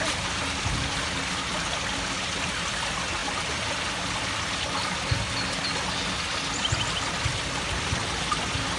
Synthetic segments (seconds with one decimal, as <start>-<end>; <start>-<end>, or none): none